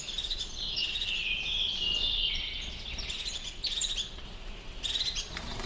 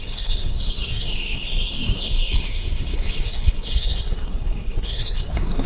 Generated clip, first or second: second